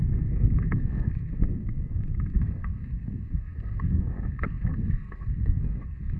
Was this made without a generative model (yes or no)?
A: no